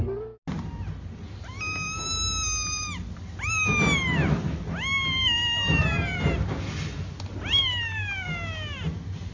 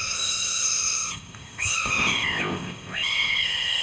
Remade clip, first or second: second